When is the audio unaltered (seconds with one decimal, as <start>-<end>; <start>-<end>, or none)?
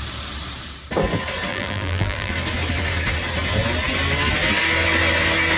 0.0-1.5; 2.3-5.6